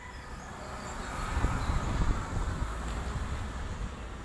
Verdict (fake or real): fake